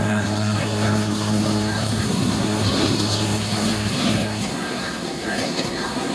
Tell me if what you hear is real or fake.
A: fake